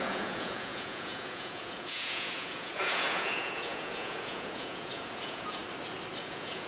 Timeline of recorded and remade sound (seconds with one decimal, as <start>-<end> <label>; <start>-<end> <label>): 0.0-5.6 remade; 5.6-6.2 recorded; 6.2-6.7 remade